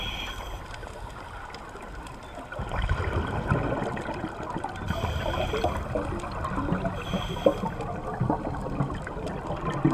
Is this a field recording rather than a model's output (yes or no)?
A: yes